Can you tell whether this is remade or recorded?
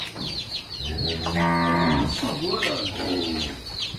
recorded